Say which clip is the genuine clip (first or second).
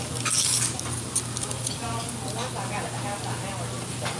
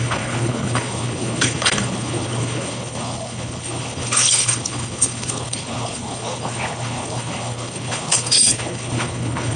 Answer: first